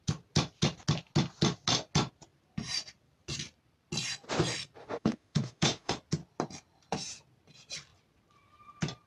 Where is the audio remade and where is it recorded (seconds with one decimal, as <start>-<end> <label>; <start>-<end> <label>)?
0.0-4.8 recorded; 4.8-5.9 remade; 5.9-9.1 recorded